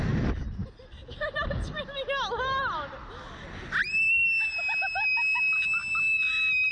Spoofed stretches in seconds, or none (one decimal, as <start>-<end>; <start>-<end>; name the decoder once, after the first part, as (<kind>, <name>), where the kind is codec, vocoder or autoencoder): none